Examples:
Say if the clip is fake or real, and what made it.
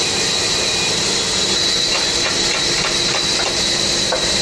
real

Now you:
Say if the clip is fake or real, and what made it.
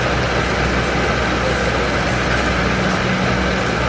real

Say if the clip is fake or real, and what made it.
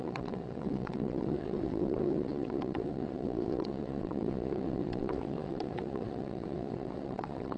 fake, vocoder, WaveNeXt